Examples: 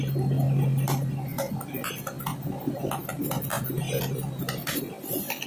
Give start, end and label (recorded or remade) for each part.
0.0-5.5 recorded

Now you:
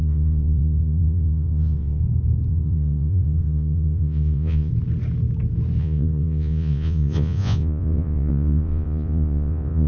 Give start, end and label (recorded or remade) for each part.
0.0-2.0 remade; 2.0-2.5 recorded; 2.5-4.7 remade; 4.7-5.8 recorded; 5.8-9.9 remade

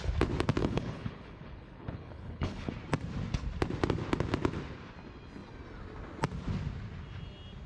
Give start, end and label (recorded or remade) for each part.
0.0-0.6 recorded; 0.6-2.7 remade; 2.7-7.7 recorded

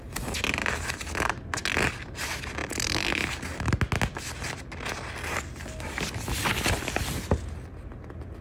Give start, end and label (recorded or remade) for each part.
0.0-8.4 recorded